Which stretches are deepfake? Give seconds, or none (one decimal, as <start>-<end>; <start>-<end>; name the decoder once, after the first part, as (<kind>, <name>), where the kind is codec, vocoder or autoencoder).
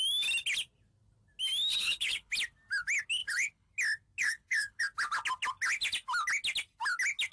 1.7-2.3 (codec, HILCodec); 3.2-3.7; 4.2-4.8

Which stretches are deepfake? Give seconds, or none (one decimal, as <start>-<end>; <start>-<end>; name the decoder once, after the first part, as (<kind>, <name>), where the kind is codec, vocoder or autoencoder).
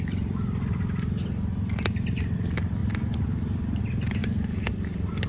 4.2-4.7 (vocoder, BigVGAN v2)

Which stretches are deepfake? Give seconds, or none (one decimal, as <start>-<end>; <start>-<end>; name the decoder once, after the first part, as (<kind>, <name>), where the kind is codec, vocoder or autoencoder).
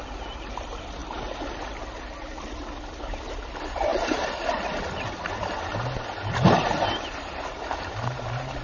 none